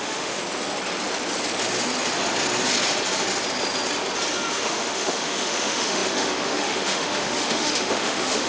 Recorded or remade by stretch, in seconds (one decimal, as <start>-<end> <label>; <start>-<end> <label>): 0.0-0.4 remade; 0.4-4.5 recorded; 4.5-8.5 remade

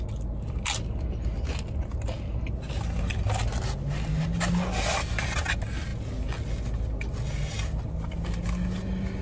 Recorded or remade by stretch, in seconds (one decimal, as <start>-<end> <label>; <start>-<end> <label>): 0.0-9.2 recorded

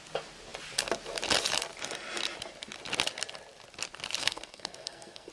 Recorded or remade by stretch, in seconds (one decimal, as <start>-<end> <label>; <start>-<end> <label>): 0.0-4.2 recorded; 4.2-5.3 remade

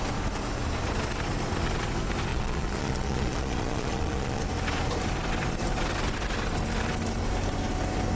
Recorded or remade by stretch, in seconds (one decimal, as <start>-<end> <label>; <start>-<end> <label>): 0.0-2.3 recorded; 2.3-4.4 remade; 4.4-8.1 recorded

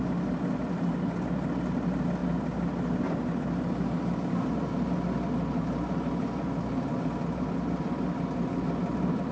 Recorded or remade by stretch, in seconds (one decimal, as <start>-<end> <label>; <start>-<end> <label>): 0.0-9.3 recorded

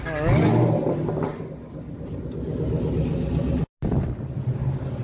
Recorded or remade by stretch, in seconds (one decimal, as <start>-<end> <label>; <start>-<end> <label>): 0.0-5.0 recorded

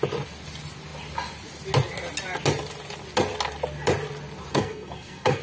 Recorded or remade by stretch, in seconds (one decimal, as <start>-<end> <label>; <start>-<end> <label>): 0.0-4.5 recorded; 4.5-5.4 remade